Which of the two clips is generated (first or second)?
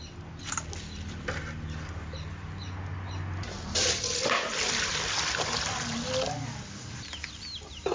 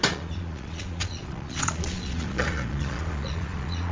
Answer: second